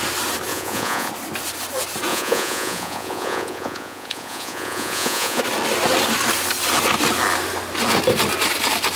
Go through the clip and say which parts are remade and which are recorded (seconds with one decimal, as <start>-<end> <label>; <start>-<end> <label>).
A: 0.0-0.5 recorded; 0.5-1.1 remade; 1.1-2.1 recorded; 2.1-5.4 remade; 5.4-9.0 recorded